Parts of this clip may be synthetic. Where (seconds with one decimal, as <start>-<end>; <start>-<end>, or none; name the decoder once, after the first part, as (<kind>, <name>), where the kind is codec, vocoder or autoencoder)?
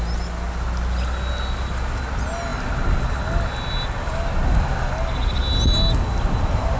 none